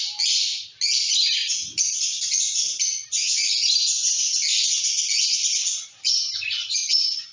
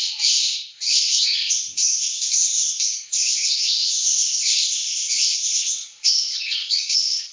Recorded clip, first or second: first